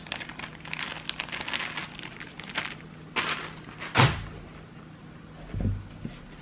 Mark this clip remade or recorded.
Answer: recorded